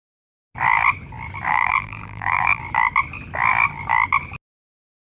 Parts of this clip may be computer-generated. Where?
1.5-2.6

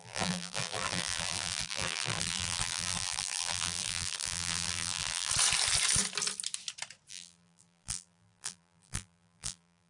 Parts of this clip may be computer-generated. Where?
0.0-5.3; 7.1-9.9

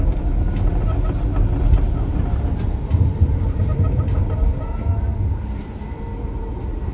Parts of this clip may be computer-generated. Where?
3.2-4.0; 5.1-6.4

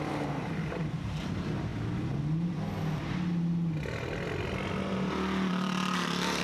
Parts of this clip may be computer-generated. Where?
0.0-1.7; 5.5-6.4

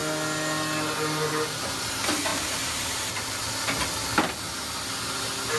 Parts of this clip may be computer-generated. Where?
2.3-3.5

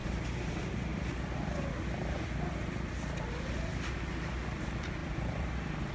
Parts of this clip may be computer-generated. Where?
0.9-1.7; 5.0-5.9